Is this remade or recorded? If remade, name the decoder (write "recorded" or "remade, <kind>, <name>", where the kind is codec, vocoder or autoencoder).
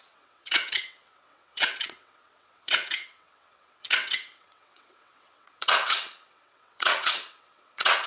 remade, vocoder, WaveNeXt